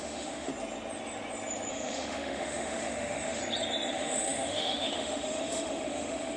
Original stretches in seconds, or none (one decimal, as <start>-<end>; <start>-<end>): 0.5-1.7; 3.4-3.9